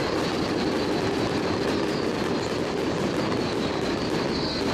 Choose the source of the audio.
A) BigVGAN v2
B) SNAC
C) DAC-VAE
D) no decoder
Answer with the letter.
D